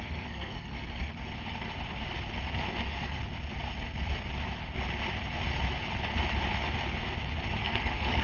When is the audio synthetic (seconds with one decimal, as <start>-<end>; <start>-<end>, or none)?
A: 0.0-1.1; 2.5-3.2; 7.6-8.2